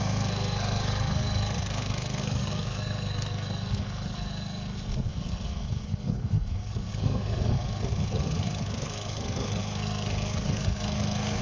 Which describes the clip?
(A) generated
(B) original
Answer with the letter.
A